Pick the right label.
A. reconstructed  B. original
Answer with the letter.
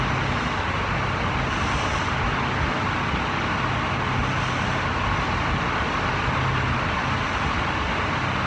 B